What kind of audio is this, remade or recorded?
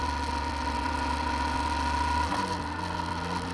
recorded